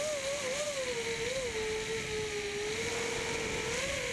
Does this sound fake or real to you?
real